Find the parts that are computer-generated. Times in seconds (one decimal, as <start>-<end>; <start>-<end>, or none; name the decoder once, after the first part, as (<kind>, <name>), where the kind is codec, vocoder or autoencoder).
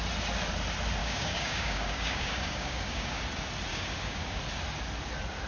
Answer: 1.0-3.2 (codec, DAC); 3.7-4.4